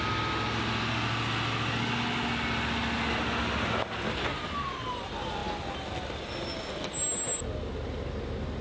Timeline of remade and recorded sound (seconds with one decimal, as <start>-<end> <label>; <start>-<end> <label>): 0.0-8.6 recorded